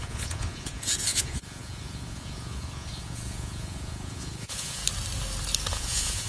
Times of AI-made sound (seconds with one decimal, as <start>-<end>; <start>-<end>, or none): 0.0-4.8; 5.7-6.3